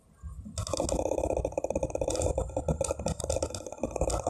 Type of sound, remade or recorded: recorded